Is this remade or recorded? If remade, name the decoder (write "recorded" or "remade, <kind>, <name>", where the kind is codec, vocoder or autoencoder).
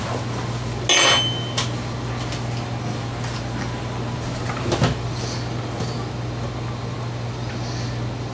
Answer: recorded